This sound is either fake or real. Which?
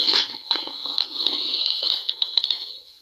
fake